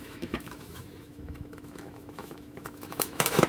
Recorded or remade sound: remade